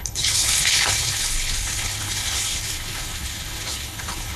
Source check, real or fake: fake